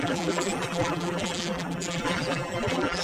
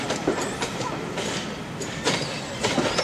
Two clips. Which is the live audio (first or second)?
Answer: second